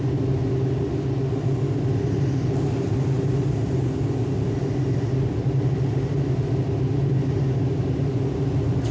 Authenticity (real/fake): real